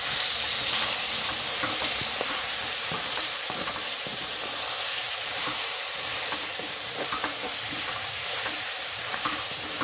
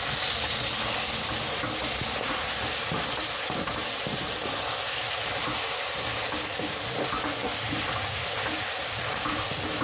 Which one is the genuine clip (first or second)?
second